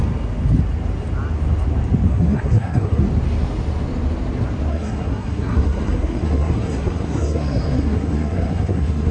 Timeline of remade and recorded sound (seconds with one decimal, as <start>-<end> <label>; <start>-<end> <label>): 0.0-2.1 recorded; 2.1-3.0 remade; 3.0-4.7 recorded; 4.7-9.1 remade